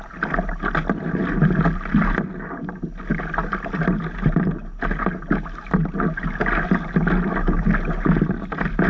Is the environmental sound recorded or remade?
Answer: recorded